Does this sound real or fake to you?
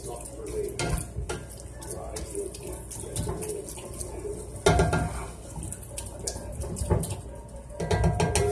real